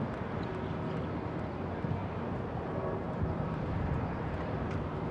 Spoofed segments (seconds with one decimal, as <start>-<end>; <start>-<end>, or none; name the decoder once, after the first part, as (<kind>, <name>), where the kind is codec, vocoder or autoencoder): 2.0-5.1 (vocoder, BigVGAN v2)